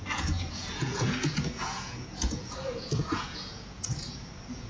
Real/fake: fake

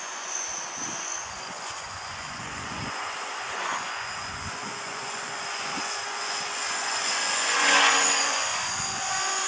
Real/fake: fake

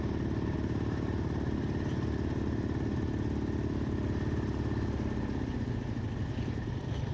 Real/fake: real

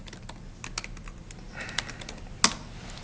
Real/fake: real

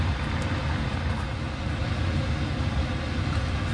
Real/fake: real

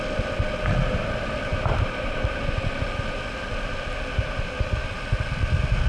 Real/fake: real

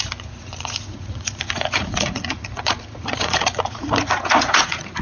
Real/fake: fake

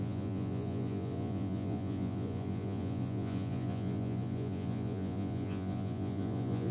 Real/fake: fake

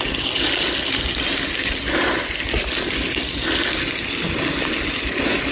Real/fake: real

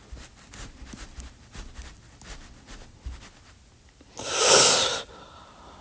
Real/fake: real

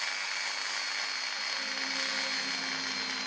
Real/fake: real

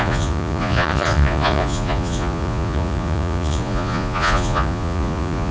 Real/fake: fake